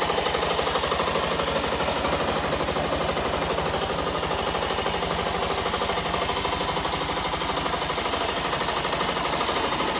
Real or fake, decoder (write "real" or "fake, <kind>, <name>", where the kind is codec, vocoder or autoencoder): real